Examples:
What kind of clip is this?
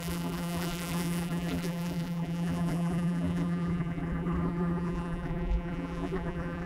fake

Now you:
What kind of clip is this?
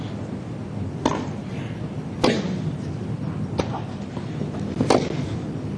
real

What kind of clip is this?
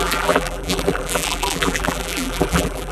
fake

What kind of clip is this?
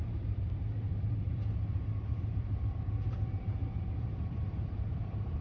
fake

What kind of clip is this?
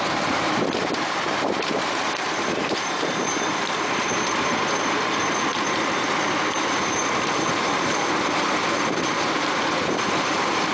fake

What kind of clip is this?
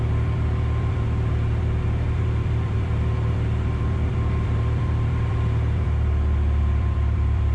fake